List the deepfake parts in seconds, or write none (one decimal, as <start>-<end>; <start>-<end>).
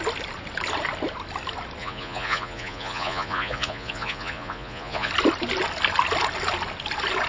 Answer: 1.8-5.1